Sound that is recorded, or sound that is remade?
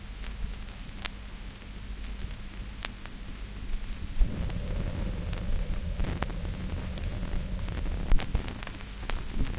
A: recorded